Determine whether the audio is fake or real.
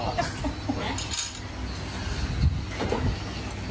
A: real